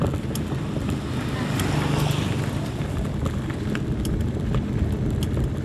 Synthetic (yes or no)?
no